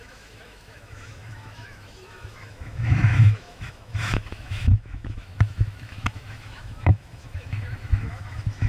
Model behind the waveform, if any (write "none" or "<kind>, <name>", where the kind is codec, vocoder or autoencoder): autoencoder, DAC-VAE